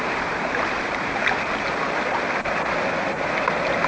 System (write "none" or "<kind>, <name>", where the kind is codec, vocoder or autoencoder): none